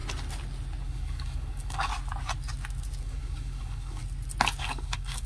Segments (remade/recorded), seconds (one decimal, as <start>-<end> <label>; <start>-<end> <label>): 0.0-0.8 recorded; 0.8-1.9 remade; 1.9-3.0 recorded; 3.0-4.0 remade; 4.0-4.6 recorded; 4.6-5.3 remade